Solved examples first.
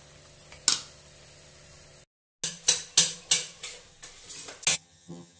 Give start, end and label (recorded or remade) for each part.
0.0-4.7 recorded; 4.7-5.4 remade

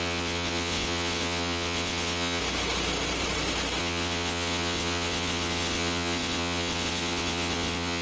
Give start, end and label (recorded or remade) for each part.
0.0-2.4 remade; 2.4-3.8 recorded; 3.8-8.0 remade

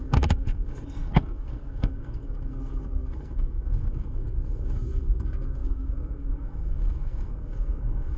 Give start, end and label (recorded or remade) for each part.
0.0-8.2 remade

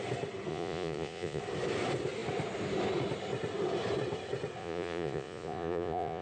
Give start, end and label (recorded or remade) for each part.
0.0-0.5 recorded; 0.5-1.4 remade; 1.4-4.6 recorded; 4.6-6.2 remade

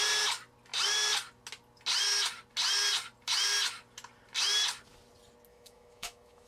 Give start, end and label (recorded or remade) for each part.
0.0-5.5 recorded; 5.5-6.5 remade

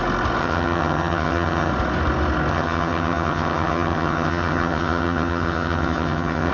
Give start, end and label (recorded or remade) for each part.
0.0-0.4 recorded; 0.4-1.7 remade; 1.7-2.5 recorded; 2.5-6.5 remade

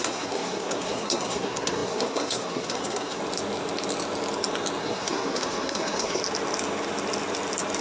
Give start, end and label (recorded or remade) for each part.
0.0-3.2 remade; 3.2-4.8 recorded; 4.8-6.2 remade; 6.2-7.8 recorded